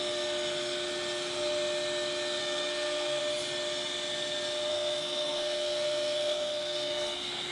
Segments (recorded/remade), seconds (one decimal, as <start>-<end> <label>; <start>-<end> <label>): 0.0-2.4 recorded; 2.4-3.2 remade; 3.2-4.7 recorded; 4.7-7.5 remade